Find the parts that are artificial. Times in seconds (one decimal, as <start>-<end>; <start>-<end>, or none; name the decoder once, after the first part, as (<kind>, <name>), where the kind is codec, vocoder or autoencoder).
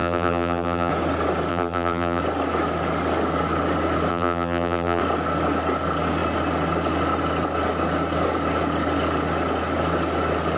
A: 0.0-0.9 (vocoder, BigVGAN v2); 1.5-2.2; 4.1-5.0